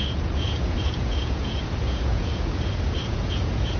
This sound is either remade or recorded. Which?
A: remade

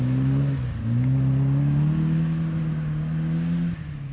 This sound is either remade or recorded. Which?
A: recorded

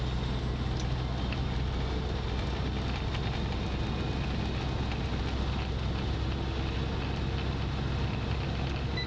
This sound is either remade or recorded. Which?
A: recorded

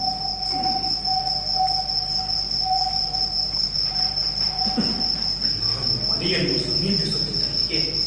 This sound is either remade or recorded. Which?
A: recorded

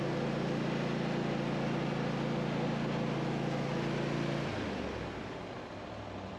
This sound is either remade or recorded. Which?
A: recorded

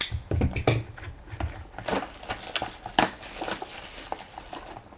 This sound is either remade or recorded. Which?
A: recorded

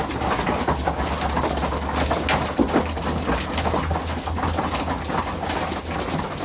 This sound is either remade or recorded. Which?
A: recorded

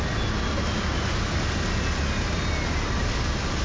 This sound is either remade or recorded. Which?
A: recorded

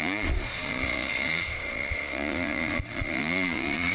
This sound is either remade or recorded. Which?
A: remade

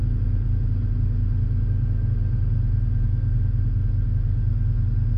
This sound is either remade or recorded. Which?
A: recorded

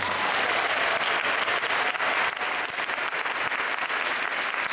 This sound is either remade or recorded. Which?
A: recorded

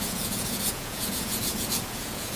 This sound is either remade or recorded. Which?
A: remade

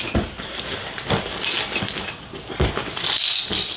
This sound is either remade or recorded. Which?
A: recorded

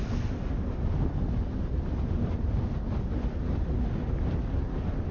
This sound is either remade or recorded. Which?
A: recorded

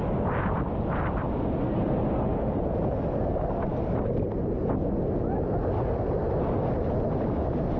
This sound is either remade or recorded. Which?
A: recorded